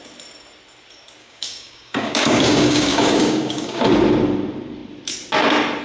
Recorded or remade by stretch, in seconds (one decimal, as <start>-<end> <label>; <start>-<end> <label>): 0.0-1.2 recorded; 1.2-3.8 remade; 3.8-5.8 recorded